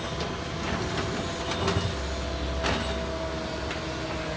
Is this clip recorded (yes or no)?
yes